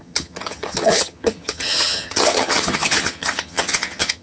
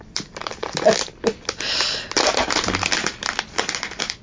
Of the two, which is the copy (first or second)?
first